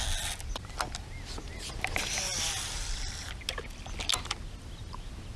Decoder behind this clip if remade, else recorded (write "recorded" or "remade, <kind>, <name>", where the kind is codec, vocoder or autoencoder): recorded